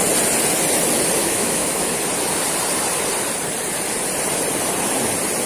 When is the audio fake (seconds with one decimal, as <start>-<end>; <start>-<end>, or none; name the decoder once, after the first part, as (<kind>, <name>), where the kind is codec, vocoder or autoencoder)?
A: 1.2-1.9 (autoencoder, DAC-VAE)